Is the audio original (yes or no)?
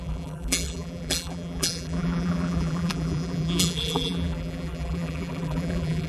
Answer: no